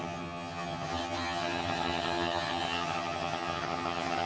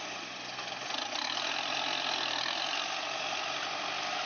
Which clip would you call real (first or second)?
second